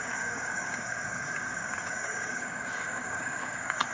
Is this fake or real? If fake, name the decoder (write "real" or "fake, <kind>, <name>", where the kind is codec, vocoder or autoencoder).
fake, codec, DAC